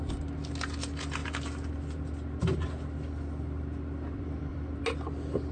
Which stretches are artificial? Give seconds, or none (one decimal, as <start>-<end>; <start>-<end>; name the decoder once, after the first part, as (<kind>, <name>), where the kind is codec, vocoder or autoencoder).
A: 2.4-4.8 (vocoder, BigVGAN v2)